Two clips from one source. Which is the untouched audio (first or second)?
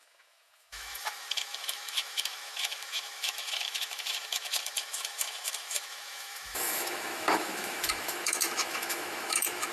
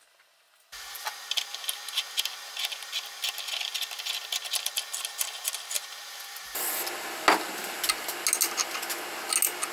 second